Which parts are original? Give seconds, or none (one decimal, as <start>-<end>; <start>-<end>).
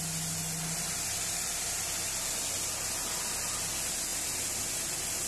0.0-5.3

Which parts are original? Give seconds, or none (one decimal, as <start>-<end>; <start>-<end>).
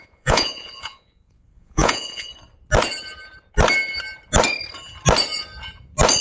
2.3-6.2